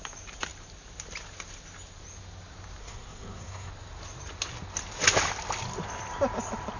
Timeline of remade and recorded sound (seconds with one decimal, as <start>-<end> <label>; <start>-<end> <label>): 0.0-2.8 recorded; 2.8-3.7 remade; 3.7-6.8 recorded